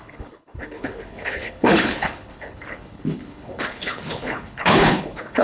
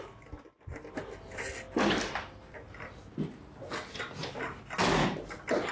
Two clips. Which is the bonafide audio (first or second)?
second